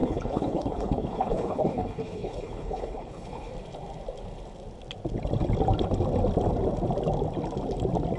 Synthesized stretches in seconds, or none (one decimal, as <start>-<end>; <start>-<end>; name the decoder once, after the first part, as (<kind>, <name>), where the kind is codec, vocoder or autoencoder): 0.0-3.5 (codec, HILCodec)